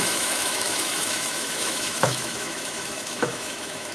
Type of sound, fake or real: fake